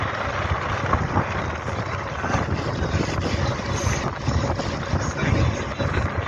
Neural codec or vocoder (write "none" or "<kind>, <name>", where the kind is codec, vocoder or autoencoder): none